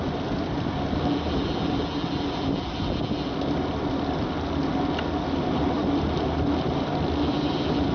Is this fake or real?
real